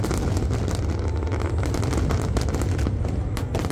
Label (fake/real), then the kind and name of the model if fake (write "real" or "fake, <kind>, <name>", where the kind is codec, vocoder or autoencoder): real